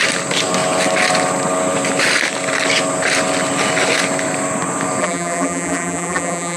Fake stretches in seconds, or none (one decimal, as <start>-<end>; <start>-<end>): 5.0-6.6